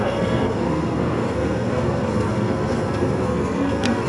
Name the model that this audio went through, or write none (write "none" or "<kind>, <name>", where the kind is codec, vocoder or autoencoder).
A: codec, SNAC